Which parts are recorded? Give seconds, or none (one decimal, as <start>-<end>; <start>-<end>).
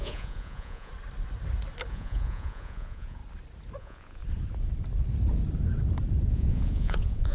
0.9-1.9; 3.2-3.8; 4.2-6.3